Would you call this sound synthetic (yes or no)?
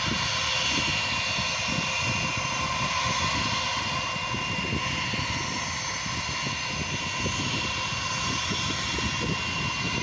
no